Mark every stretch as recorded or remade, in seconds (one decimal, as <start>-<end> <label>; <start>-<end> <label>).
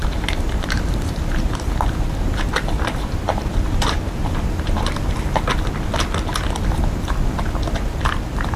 0.0-5.1 remade; 5.1-8.6 recorded